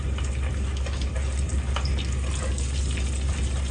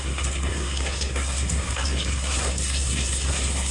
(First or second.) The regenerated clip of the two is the second